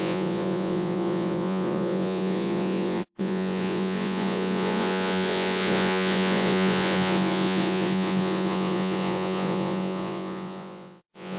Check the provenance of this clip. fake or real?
fake